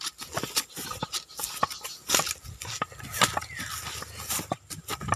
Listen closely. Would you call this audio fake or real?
real